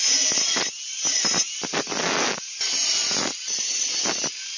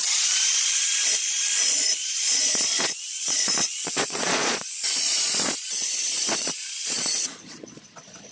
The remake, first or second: second